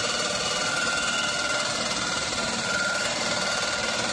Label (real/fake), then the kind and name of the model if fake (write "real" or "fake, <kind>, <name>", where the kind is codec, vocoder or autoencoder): fake, vocoder, BigVGAN v2